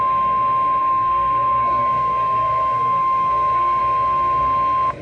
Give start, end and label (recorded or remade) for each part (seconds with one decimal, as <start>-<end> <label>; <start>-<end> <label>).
0.0-0.8 recorded; 0.8-3.8 remade; 3.8-5.0 recorded